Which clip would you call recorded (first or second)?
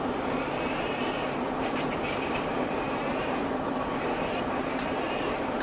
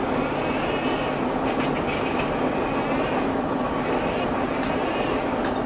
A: second